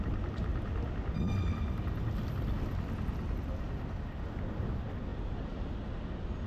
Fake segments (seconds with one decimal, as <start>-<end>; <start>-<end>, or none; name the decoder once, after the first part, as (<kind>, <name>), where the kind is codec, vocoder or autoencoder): 5.1-5.7 (vocoder, BigVGAN v2)